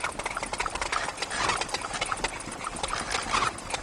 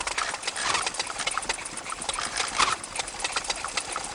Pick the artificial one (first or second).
second